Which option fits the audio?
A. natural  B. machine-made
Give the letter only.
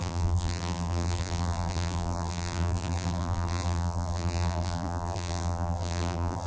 B